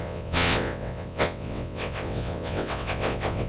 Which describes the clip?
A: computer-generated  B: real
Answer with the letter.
A